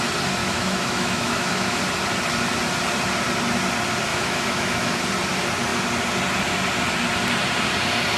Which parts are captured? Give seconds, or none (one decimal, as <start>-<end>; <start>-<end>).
0.0-0.4; 1.8-4.1; 5.0-8.2